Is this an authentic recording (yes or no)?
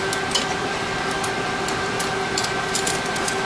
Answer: yes